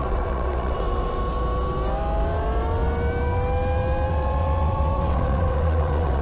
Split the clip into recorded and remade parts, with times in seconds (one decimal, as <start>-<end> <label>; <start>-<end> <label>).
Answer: 0.0-1.2 remade; 1.2-4.1 recorded; 4.1-6.2 remade